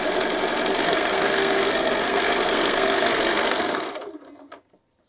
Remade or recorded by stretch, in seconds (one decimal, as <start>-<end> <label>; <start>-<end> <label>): 0.0-0.8 recorded; 0.8-3.9 remade; 3.9-5.1 recorded